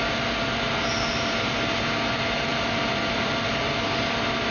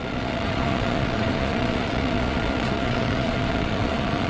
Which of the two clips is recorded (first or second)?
first